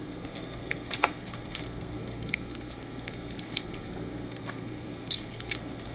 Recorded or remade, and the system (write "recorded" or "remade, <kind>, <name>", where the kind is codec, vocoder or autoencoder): remade, codec, SNAC